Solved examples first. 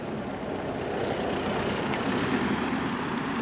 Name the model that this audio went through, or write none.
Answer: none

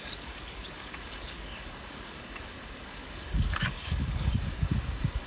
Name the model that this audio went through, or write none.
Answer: codec, DAC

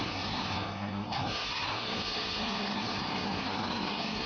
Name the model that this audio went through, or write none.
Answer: codec, SNAC